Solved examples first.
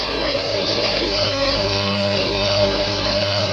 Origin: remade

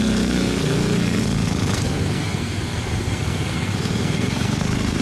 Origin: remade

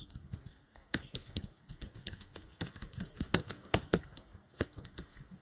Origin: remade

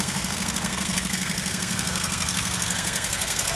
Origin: remade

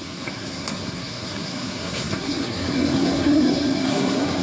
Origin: remade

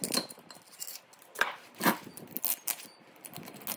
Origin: recorded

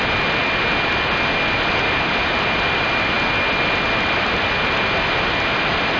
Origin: recorded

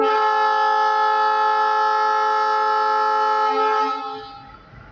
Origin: recorded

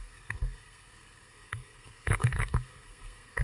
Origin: remade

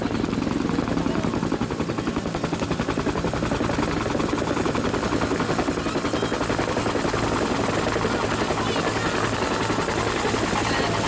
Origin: recorded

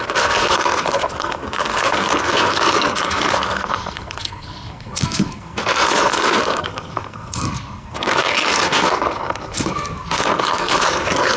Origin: remade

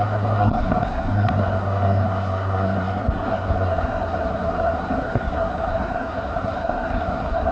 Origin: remade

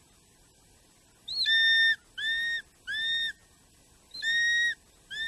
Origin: recorded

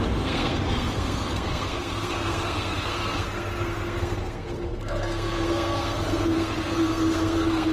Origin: remade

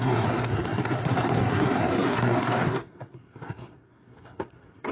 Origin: remade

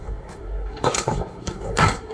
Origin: remade